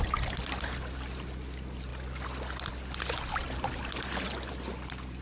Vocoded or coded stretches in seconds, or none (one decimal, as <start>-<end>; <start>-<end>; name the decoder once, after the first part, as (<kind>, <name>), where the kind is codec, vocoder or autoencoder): none